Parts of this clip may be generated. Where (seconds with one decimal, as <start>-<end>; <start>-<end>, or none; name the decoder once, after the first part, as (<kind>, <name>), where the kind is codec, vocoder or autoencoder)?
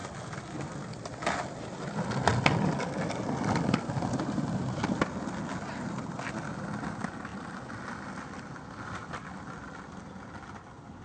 2.3-4.0 (vocoder, BigVGAN v2); 7.3-9.3